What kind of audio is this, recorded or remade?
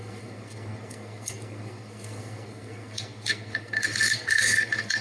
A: remade